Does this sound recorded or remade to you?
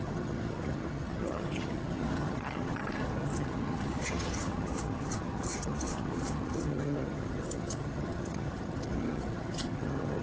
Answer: remade